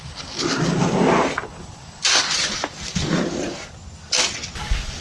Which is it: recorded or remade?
recorded